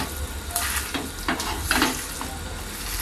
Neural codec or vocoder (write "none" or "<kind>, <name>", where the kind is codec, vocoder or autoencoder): none